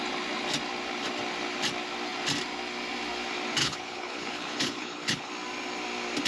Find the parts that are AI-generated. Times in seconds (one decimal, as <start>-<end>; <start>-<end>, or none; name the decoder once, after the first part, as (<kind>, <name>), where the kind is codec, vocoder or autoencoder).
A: 3.6-5.3 (codec, HILCodec)